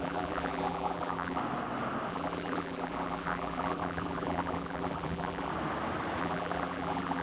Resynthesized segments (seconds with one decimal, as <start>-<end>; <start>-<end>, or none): 0.0-1.4; 2.1-5.5; 6.2-7.2